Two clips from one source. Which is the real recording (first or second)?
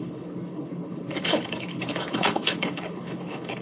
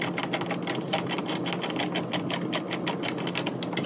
second